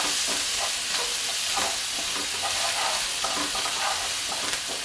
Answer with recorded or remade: recorded